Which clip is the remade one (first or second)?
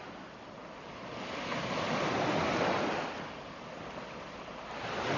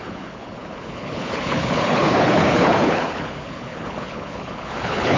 second